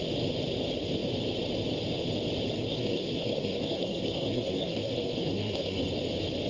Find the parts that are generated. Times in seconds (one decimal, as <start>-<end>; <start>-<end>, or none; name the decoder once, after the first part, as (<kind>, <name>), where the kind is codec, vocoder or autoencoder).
2.5-5.9 (codec, SNAC)